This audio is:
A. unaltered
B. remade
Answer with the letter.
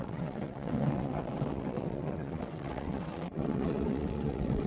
B